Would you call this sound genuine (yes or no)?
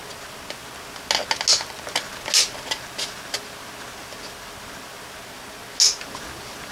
yes